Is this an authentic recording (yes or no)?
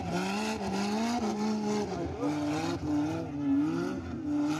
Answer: yes